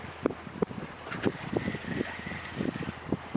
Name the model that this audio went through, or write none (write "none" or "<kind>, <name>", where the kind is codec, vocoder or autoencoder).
none